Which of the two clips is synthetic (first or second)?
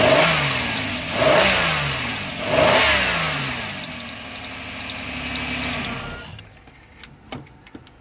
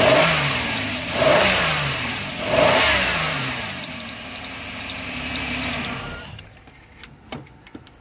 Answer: second